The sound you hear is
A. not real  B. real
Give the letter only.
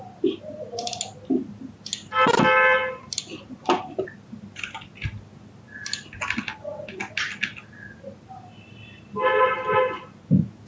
B